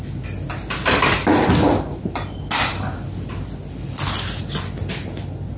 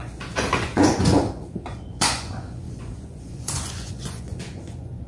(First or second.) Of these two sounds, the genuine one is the first